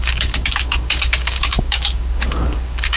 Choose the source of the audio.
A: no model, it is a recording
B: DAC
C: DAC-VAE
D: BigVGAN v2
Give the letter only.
B